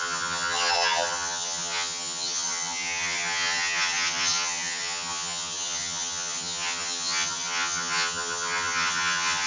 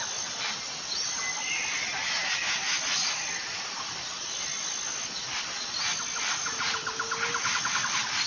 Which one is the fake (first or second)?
first